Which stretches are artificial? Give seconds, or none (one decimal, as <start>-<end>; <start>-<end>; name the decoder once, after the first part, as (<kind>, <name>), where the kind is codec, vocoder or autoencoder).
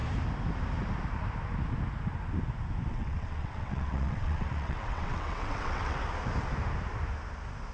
2.9-6.0 (vocoder, WaveNeXt)